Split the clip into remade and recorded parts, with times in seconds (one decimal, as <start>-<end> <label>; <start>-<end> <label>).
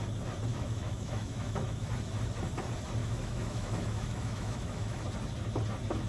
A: 0.0-0.5 recorded; 0.5-1.9 remade; 1.9-3.0 recorded; 3.0-5.0 remade; 5.0-6.1 recorded